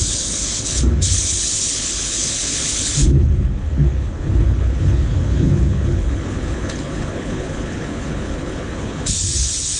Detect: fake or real fake